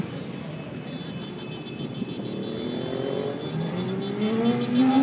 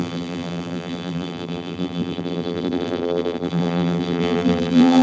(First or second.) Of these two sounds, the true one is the first